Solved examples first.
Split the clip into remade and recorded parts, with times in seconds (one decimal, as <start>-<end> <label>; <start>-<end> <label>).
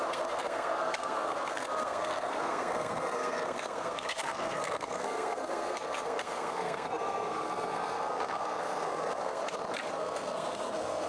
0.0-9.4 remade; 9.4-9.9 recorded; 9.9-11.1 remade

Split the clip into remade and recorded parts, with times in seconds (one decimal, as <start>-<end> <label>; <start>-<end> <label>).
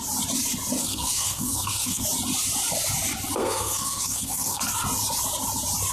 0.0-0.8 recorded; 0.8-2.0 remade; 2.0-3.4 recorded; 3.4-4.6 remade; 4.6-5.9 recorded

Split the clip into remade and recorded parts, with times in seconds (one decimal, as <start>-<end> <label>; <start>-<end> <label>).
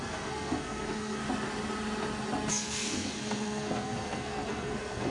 0.0-1.2 remade; 1.2-2.5 recorded; 2.5-5.1 remade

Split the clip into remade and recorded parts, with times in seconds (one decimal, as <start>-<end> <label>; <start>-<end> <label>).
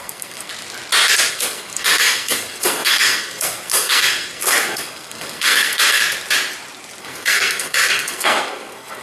0.0-0.5 remade; 0.5-1.3 recorded; 1.3-6.0 remade; 6.0-7.0 recorded; 7.0-9.0 remade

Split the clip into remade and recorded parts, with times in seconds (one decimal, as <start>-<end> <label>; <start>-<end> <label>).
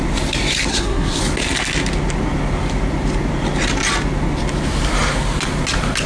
0.0-0.7 recorded; 0.7-1.2 remade; 1.2-6.1 recorded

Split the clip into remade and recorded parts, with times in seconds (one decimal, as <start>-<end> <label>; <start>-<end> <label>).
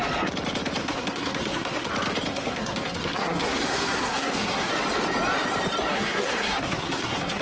0.0-0.8 recorded; 0.8-1.9 remade; 1.9-2.3 recorded; 2.3-4.7 remade; 4.7-5.9 recorded; 5.9-7.4 remade